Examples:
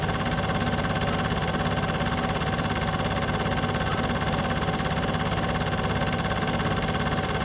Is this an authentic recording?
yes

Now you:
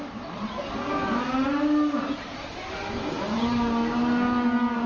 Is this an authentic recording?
yes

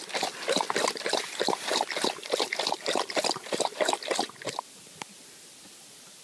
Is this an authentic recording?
yes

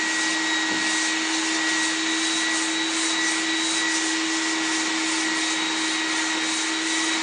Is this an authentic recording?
yes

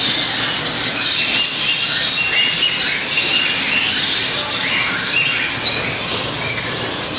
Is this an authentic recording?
yes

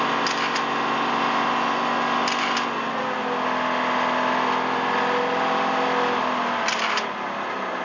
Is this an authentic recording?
yes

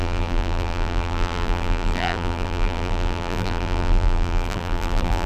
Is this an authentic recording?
no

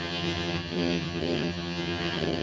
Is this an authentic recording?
no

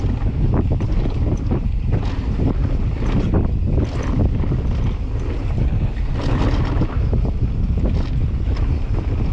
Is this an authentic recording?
yes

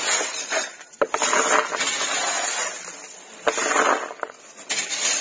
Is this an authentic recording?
no